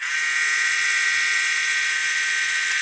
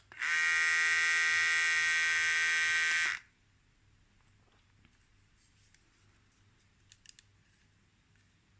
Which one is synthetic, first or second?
first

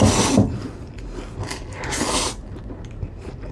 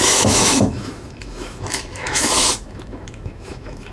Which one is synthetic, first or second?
second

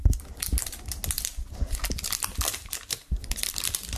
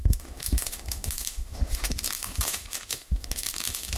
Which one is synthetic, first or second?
second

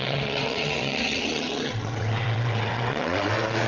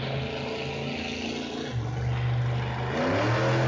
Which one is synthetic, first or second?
first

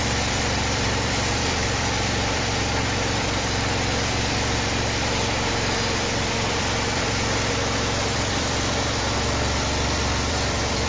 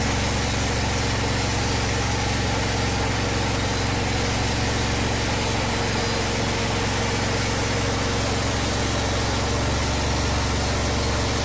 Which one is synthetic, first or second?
first